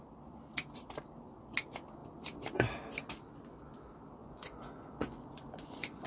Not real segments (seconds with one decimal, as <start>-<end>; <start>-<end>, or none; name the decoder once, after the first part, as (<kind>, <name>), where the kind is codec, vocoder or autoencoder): 4.2-6.1 (vocoder, Vocos)